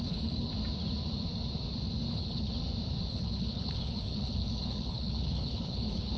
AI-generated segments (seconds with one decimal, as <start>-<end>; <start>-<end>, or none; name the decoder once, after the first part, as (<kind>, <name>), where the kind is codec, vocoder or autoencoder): 0.0-0.5 (codec, HILCodec); 2.1-2.5; 3.1-6.2